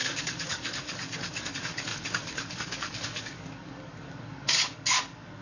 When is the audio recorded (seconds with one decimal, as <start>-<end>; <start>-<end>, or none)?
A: none